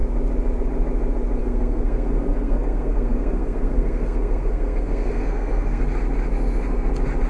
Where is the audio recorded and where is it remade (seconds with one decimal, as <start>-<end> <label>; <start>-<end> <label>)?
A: 0.0-1.4 recorded; 1.4-5.8 remade; 5.8-7.3 recorded

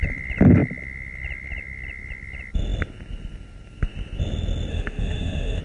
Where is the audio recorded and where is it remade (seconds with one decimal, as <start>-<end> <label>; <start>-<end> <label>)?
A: 0.0-4.7 recorded; 4.7-5.6 remade

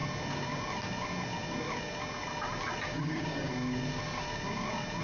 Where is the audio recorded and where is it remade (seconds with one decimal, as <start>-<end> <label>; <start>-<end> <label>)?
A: 0.0-2.9 recorded; 2.9-3.5 remade; 3.5-5.0 recorded

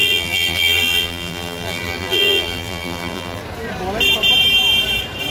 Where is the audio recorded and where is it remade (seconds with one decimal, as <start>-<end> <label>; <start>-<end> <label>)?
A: 0.0-3.4 remade; 3.4-5.3 recorded

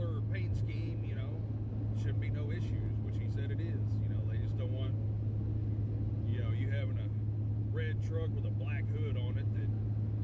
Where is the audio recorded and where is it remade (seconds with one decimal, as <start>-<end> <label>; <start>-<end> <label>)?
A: 0.0-0.5 recorded; 0.5-1.2 remade; 1.2-10.2 recorded